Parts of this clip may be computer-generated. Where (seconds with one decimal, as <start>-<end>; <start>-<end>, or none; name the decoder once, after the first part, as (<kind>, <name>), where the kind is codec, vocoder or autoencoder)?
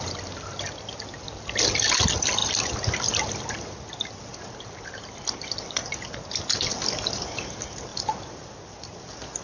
2.4-3.4 (vocoder, BigVGAN v2); 4.3-5.5; 7.9-8.5